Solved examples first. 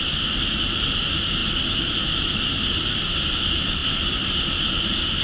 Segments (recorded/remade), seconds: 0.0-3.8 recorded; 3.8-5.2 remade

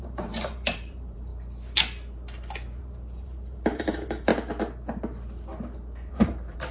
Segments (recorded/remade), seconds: 0.0-1.3 remade; 1.3-2.8 recorded; 2.8-4.3 remade; 4.3-6.1 recorded; 6.1-6.7 remade

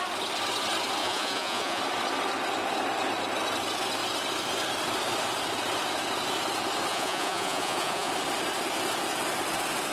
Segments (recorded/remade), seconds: 0.0-1.0 recorded; 1.0-1.8 remade; 1.8-6.9 recorded; 6.9-8.1 remade; 8.1-9.9 recorded